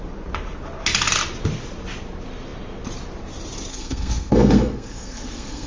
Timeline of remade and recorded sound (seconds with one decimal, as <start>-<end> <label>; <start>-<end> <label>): 0.0-3.7 recorded; 3.7-5.7 remade

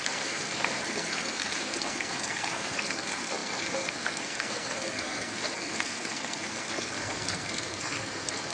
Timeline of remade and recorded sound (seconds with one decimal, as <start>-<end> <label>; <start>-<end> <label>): 0.0-8.5 remade

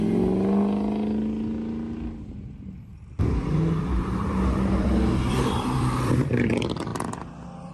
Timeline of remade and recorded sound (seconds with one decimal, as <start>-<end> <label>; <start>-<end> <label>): 0.0-2.9 recorded; 2.9-6.5 remade; 6.5-7.7 recorded

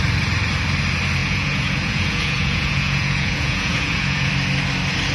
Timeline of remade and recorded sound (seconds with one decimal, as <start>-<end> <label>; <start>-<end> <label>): 0.0-1.2 recorded; 1.2-4.3 remade; 4.3-5.1 recorded

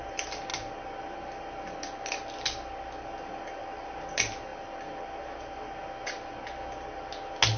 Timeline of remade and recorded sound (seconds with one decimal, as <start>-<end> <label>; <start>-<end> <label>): 0.0-7.6 recorded